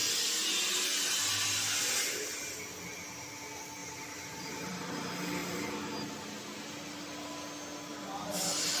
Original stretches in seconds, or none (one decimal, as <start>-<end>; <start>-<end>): 0.0-3.8; 4.9-8.8